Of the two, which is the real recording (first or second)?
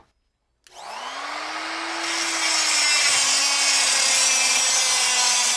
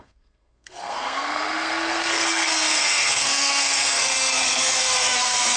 first